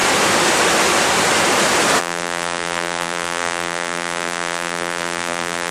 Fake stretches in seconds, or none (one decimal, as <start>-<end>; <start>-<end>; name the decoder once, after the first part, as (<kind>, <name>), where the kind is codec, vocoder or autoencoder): 2.0-5.7 (vocoder, BigVGAN v2)